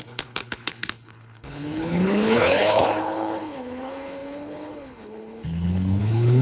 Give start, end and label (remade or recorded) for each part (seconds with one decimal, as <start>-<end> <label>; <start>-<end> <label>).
0.0-6.4 remade